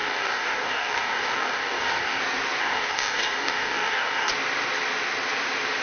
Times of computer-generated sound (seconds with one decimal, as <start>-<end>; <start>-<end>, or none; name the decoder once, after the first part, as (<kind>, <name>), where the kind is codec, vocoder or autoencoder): 0.0-2.2 (codec, DAC); 2.6-4.3